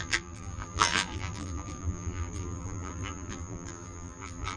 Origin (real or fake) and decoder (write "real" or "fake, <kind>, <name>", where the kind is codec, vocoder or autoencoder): fake, vocoder, BigVGAN v2